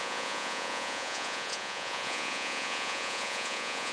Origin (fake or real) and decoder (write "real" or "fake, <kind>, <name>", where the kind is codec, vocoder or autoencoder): fake, vocoder, Vocos